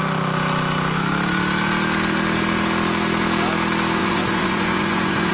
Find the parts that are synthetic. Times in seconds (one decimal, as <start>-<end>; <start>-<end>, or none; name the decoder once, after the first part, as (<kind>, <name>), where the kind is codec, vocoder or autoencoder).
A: 4.0-5.3 (vocoder, Vocos)